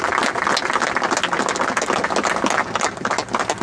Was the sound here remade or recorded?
recorded